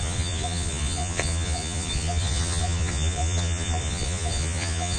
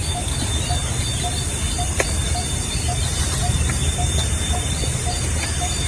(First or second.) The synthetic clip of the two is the first